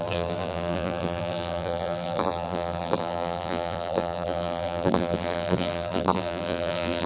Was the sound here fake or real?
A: fake